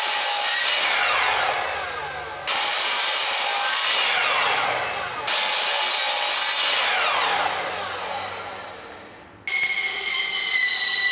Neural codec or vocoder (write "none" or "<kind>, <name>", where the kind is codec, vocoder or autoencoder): none